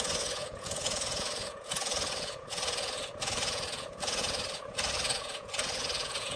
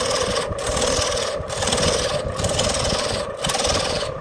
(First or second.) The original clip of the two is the second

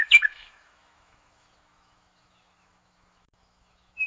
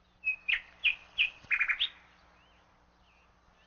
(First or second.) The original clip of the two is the second